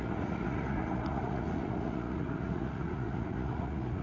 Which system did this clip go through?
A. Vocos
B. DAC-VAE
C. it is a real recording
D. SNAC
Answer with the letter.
A